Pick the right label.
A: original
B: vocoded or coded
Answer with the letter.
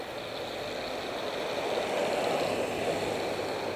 A